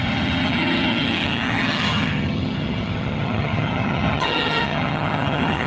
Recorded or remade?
remade